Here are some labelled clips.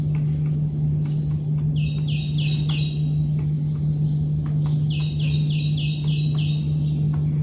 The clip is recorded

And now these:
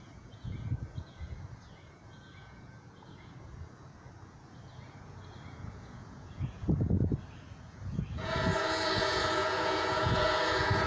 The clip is remade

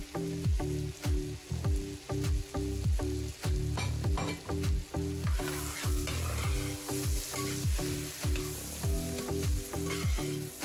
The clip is recorded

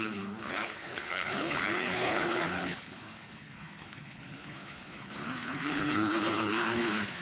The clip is remade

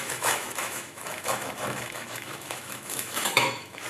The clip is remade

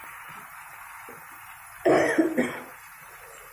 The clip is remade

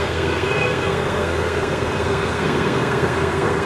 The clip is remade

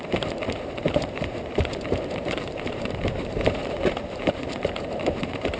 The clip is remade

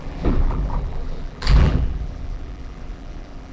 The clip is remade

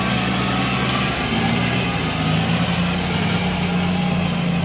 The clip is recorded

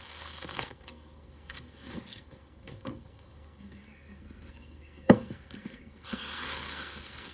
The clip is remade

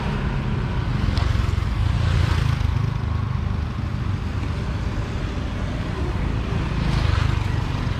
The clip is recorded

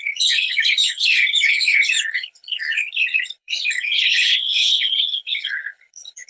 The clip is remade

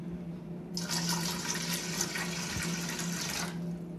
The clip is recorded